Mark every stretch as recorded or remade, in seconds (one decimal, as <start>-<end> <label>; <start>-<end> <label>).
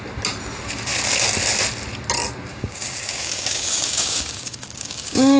0.0-2.5 recorded; 2.5-5.4 remade